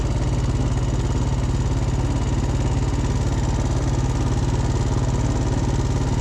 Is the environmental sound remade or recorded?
recorded